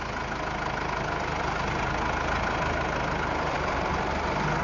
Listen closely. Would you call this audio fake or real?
real